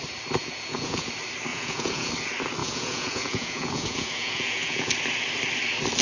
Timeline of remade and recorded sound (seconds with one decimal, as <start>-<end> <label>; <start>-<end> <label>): 0.0-0.4 recorded; 0.4-1.1 remade; 1.1-1.5 recorded; 1.5-2.1 remade; 2.1-2.6 recorded; 2.6-4.9 remade; 4.9-6.0 recorded

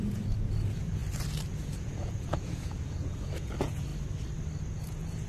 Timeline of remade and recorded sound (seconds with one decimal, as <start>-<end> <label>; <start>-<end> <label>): 0.0-1.0 remade; 1.0-1.6 recorded; 1.6-3.9 remade; 3.9-4.6 recorded; 4.6-5.3 remade

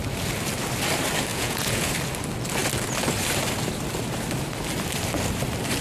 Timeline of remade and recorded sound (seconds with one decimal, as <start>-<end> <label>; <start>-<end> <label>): 0.0-1.3 recorded; 1.3-1.9 remade; 1.9-5.8 recorded

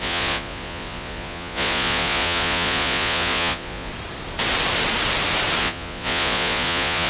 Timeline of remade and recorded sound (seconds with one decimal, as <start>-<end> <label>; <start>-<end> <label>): 0.0-3.9 remade; 3.9-5.6 recorded; 5.6-7.1 remade

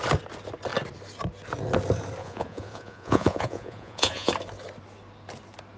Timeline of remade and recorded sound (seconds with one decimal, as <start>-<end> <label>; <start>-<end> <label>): 0.0-2.2 recorded; 2.2-4.3 remade; 4.3-5.8 recorded

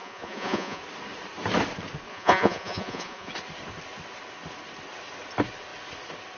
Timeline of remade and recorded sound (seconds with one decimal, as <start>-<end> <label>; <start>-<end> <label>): 0.0-0.8 remade; 0.8-2.1 recorded; 2.1-3.3 remade; 3.3-6.4 recorded

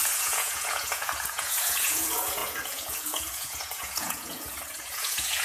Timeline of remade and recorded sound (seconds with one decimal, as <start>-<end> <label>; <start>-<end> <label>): 0.0-5.4 remade

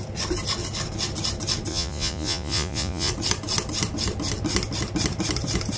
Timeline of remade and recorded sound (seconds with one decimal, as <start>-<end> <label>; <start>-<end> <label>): 0.0-1.7 recorded; 1.7-3.1 remade; 3.1-5.8 recorded